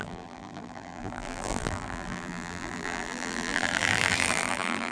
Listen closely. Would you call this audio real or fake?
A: fake